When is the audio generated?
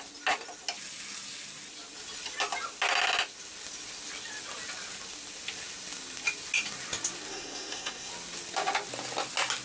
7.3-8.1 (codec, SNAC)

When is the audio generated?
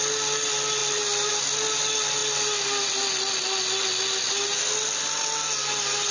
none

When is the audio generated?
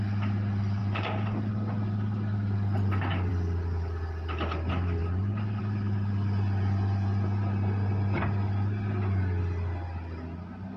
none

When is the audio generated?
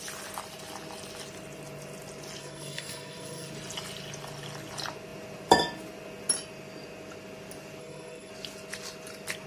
2.4-3.5 (codec, SNAC); 7.8-8.3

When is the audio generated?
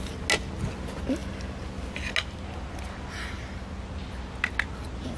none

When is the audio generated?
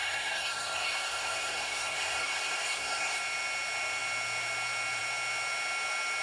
0.0-3.2 (codec, SNAC)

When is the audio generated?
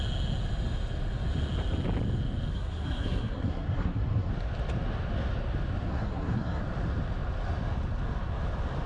2.5-4.3 (codec, SNAC); 5.9-6.6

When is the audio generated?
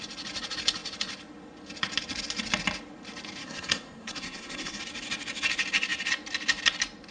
3.4-4.8 (codec, SNAC)